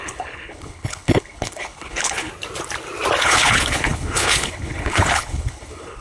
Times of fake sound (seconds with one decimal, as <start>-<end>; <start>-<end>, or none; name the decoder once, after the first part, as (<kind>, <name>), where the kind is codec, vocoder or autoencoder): 0.0-2.3 (codec, HILCodec); 3.2-6.0